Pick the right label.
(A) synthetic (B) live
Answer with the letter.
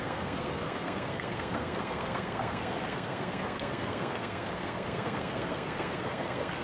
A